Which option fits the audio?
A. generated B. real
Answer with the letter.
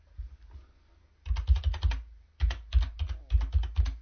B